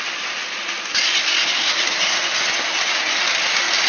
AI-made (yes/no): no